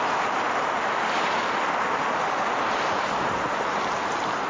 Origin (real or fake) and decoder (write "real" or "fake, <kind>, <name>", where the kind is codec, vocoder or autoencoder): real